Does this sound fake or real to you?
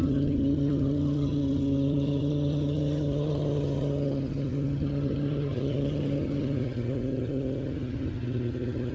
fake